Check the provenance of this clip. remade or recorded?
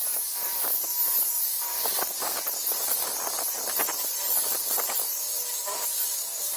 recorded